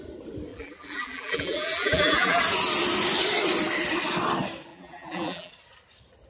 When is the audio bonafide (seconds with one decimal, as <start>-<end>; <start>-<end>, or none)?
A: 0.0-0.5; 2.4-4.7; 5.5-6.3